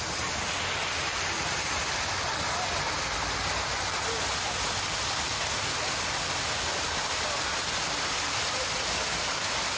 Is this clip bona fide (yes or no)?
yes